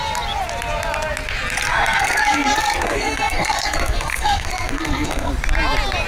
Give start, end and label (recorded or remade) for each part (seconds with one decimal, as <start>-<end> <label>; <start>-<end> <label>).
0.0-1.7 recorded; 1.7-5.3 remade; 5.3-6.1 recorded

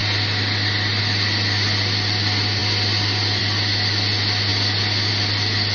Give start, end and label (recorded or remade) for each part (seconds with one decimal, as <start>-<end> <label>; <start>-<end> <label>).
0.0-5.7 recorded

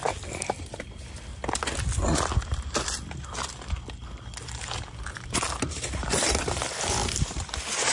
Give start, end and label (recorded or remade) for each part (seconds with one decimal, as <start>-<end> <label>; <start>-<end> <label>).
0.0-0.6 recorded; 0.6-1.3 remade; 1.3-5.7 recorded; 5.7-7.9 remade

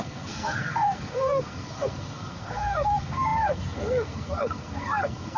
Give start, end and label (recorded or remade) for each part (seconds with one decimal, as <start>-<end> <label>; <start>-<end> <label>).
0.0-5.4 remade